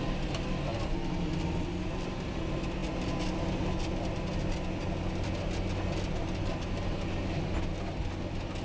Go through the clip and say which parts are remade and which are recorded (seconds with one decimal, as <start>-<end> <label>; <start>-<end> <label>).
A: 0.0-8.6 recorded